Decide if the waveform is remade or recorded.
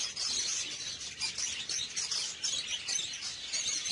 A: recorded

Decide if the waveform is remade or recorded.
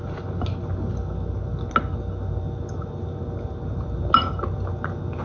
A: recorded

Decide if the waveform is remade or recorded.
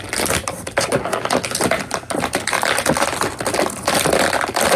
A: recorded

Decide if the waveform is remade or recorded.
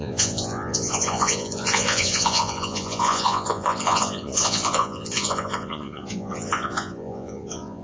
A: remade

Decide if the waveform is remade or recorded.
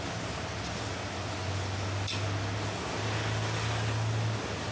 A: recorded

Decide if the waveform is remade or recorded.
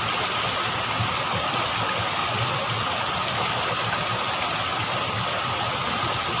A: recorded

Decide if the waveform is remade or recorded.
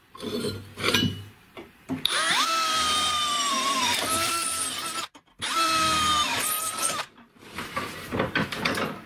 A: remade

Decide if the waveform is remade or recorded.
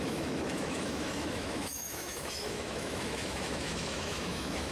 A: remade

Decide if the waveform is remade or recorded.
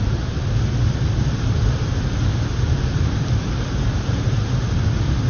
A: recorded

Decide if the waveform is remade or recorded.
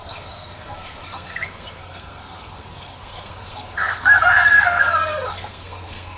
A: remade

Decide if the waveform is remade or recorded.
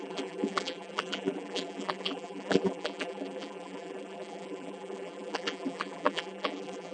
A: remade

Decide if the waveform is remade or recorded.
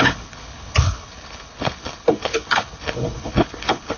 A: remade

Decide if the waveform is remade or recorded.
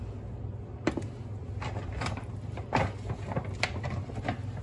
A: recorded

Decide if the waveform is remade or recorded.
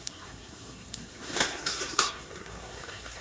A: remade